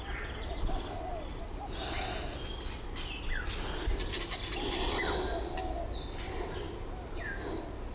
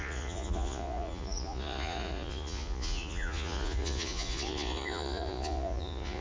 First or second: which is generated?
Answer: second